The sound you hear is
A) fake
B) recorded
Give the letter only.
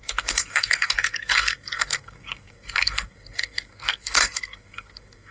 A